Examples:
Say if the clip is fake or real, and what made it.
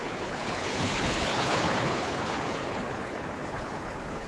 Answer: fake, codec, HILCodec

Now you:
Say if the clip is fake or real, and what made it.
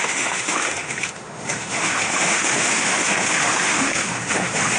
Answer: fake, autoencoder, DAC-VAE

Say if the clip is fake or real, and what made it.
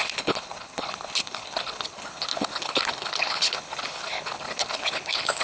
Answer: fake, codec, HILCodec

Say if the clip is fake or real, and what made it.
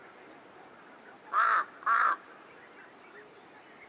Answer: real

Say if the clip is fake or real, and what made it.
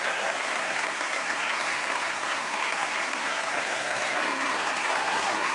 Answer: fake, codec, SNAC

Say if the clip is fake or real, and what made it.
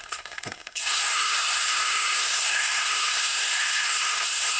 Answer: fake, codec, SNAC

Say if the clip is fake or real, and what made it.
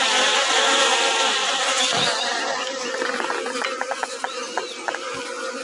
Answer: real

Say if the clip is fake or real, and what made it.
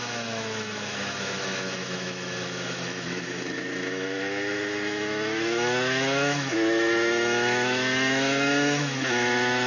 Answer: fake, autoencoder, DAC-VAE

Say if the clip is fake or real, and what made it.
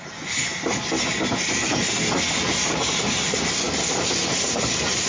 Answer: real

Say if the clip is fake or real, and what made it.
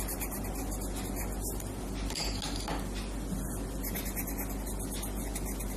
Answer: real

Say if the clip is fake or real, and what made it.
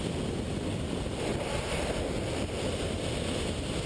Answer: real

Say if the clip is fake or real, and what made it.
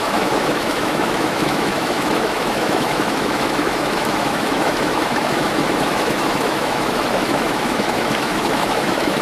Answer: fake, autoencoder, DAC-VAE